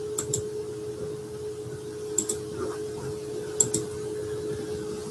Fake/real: real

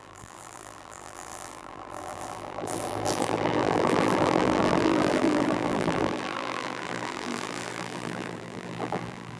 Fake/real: fake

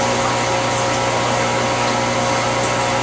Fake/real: real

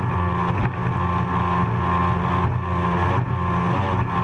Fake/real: real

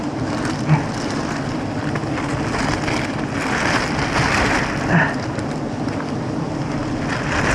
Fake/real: real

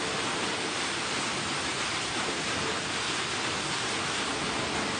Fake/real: real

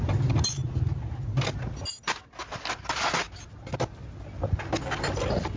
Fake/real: real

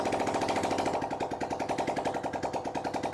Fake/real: real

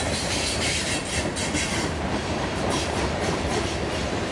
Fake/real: fake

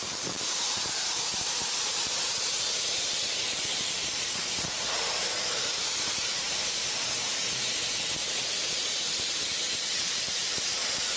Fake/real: fake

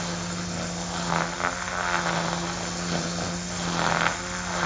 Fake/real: real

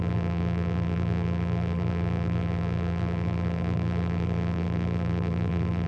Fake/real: fake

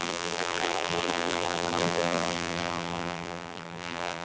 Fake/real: fake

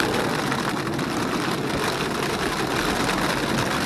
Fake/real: real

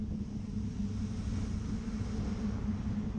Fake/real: real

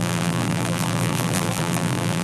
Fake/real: fake